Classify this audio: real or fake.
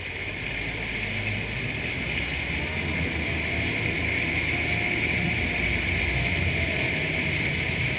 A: real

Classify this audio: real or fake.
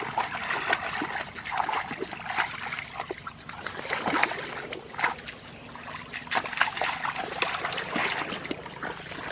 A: real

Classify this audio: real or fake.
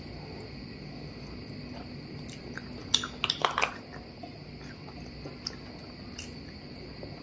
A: real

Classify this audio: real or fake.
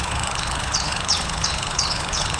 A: fake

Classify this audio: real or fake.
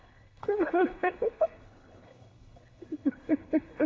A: fake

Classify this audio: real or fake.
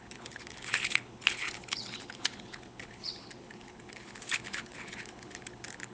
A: fake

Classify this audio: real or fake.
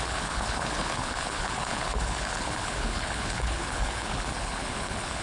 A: fake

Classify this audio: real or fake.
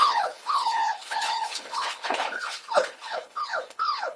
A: fake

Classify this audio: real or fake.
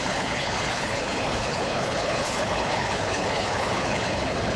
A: fake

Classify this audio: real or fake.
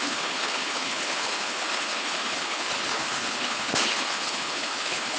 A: fake